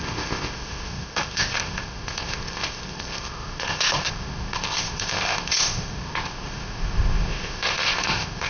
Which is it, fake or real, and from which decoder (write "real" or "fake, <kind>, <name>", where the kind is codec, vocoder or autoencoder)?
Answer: fake, codec, ZipCodec